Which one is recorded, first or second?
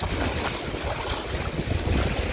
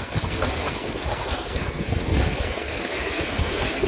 first